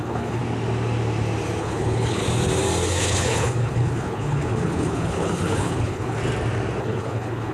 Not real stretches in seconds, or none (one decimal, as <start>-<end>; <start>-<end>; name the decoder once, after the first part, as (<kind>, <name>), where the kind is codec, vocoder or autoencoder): 0.0-0.4 (codec, HILCodec); 1.6-2.2; 3.0-6.2; 6.8-7.5